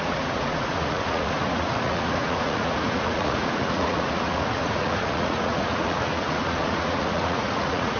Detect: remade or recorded remade